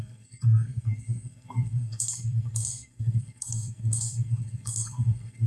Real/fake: fake